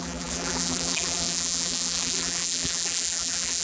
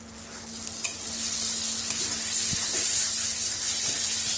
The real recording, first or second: second